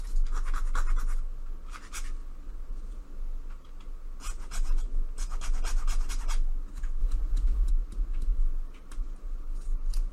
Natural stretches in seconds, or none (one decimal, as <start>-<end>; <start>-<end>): 0.0-7.0; 7.7-10.1